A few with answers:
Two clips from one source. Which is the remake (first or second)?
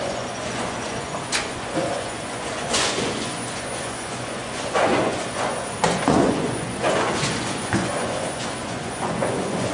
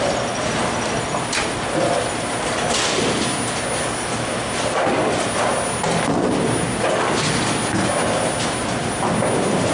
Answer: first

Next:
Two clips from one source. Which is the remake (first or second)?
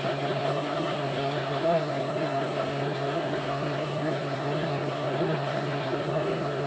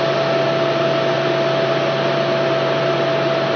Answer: first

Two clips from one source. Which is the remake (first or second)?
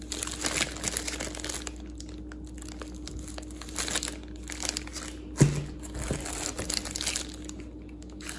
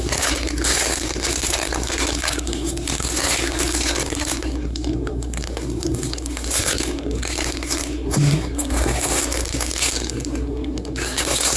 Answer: second